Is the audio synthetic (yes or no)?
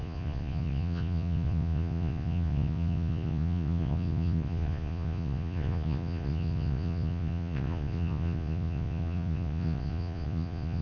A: yes